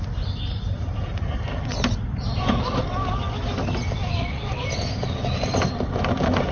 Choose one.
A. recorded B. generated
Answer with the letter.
A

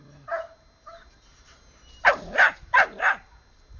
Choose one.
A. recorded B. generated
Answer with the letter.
B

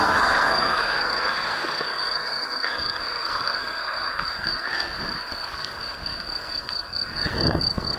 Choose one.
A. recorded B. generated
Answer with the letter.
B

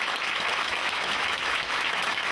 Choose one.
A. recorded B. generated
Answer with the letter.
B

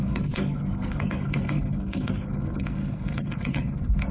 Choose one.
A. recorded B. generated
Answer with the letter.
B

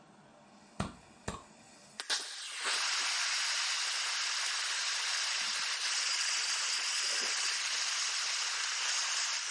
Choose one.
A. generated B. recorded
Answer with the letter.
B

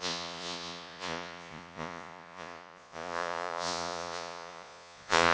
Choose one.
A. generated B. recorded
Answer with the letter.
A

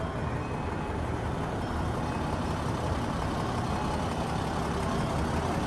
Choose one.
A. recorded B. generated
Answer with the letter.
A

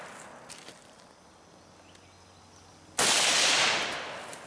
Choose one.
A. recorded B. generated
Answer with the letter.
A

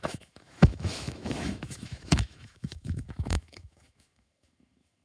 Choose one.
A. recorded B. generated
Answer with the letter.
B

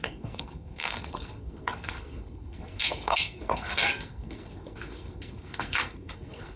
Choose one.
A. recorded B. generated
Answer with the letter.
B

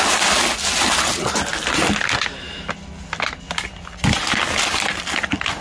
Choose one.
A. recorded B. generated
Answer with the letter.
A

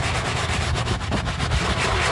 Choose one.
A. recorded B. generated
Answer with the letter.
A